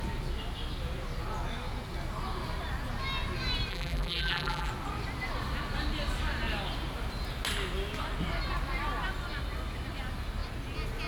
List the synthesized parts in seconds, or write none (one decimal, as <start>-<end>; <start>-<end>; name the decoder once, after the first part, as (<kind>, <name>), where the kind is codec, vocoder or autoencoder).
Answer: 3.7-4.7 (vocoder, BigVGAN v2)